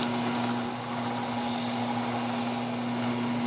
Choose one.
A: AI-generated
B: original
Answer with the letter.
B